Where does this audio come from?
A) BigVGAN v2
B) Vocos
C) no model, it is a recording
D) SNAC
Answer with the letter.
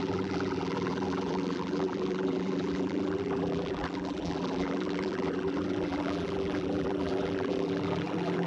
A